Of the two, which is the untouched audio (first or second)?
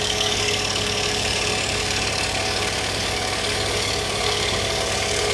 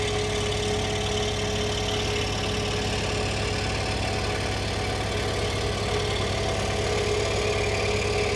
second